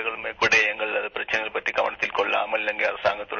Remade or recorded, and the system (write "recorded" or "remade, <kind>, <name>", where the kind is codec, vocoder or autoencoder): recorded